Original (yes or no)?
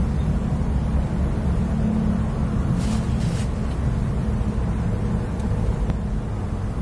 yes